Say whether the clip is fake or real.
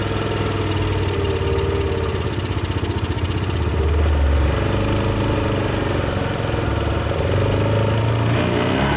real